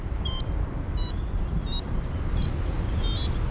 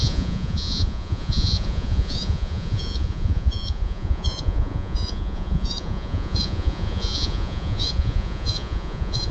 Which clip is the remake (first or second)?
second